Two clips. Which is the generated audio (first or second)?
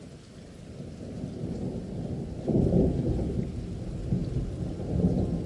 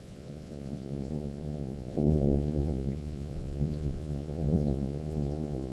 second